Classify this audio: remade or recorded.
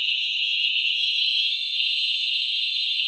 remade